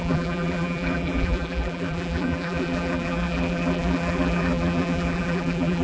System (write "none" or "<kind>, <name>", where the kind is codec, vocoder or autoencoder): vocoder, BigVGAN v2